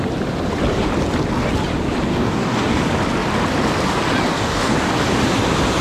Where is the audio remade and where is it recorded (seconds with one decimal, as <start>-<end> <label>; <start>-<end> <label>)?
0.0-2.1 recorded; 2.1-2.8 remade; 2.8-4.3 recorded; 4.3-4.9 remade; 4.9-5.8 recorded